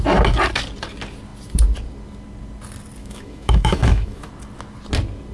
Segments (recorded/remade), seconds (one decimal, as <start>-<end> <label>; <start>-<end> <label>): 0.0-3.0 recorded; 3.0-4.3 remade; 4.3-5.3 recorded

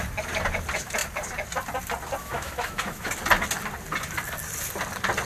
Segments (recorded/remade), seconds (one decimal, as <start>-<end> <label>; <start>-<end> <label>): 0.0-2.2 recorded; 2.2-3.1 remade; 3.1-5.2 recorded

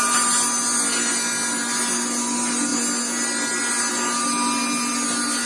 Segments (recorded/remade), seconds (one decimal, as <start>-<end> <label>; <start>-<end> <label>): 0.0-5.5 recorded

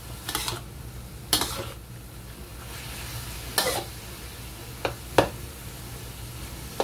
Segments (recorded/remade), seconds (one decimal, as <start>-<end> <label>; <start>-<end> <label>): 0.0-6.8 recorded

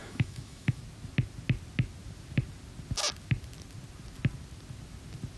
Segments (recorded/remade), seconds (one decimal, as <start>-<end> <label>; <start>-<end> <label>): 0.0-0.8 remade; 0.8-5.4 recorded